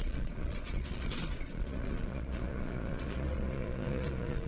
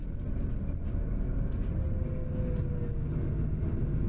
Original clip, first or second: second